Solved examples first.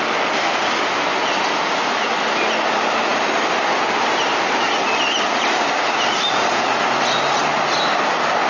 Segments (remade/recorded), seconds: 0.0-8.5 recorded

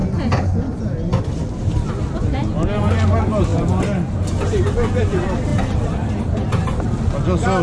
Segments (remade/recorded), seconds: 0.0-7.6 recorded

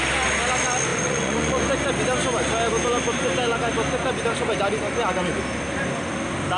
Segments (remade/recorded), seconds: 0.0-0.9 recorded; 0.9-1.6 remade; 1.6-6.6 recorded

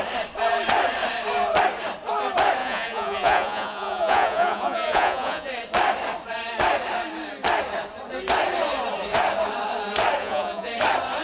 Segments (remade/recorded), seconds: 0.0-2.6 recorded; 2.6-5.5 remade; 5.5-10.2 recorded; 10.2-10.7 remade; 10.7-11.2 recorded

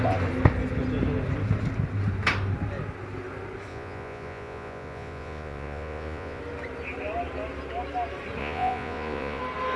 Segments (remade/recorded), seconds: 0.0-3.7 recorded; 3.7-6.4 remade; 6.4-8.4 recorded; 8.4-9.4 remade; 9.4-9.8 recorded

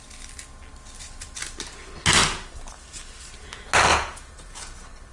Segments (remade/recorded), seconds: 0.0-3.9 recorded; 3.9-4.6 remade; 4.6-5.1 recorded

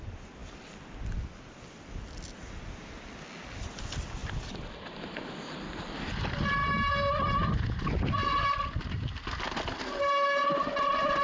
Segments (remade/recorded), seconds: 0.0-11.2 recorded